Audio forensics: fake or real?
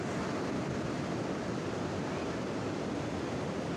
real